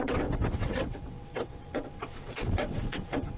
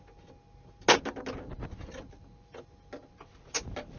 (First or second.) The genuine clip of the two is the second